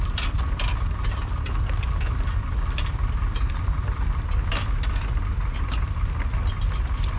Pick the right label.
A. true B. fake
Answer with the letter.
A